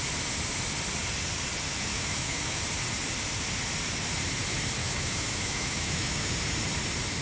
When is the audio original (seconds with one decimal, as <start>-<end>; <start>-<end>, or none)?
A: 0.0-1.9; 2.6-4.8; 6.3-7.2